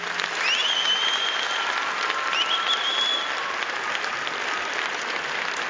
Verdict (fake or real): real